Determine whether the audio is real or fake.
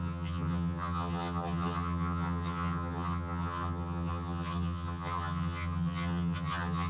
fake